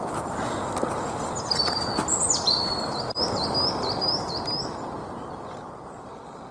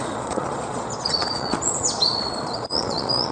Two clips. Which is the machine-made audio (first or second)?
second